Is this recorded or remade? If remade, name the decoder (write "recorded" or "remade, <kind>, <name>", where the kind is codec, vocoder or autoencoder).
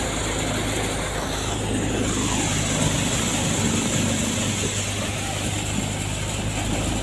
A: recorded